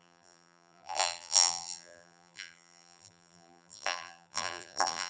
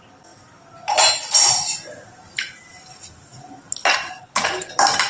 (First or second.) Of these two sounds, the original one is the second